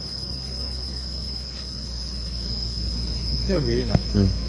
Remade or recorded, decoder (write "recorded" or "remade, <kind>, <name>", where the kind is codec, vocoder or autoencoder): remade, codec, SNAC